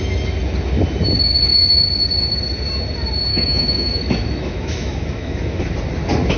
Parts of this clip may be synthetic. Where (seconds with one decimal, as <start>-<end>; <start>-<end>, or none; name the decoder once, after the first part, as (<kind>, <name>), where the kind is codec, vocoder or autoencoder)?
3.3-5.6 (autoencoder, DAC-VAE)